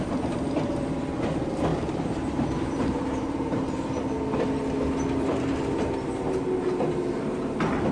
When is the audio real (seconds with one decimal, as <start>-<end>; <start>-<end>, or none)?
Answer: 0.0-1.7; 4.0-7.9